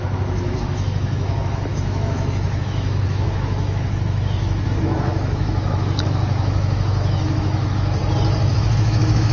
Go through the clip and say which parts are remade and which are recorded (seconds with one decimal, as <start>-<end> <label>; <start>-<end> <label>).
0.0-8.0 remade; 8.0-8.5 recorded; 8.5-9.3 remade